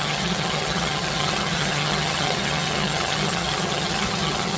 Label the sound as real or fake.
fake